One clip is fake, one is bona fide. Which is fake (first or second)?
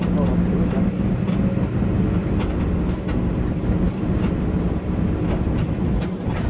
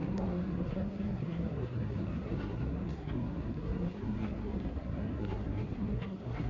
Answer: second